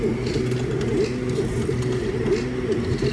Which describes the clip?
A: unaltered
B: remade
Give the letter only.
A